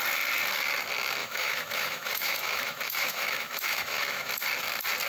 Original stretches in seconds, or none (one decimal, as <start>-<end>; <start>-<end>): 0.0-1.2; 4.3-5.1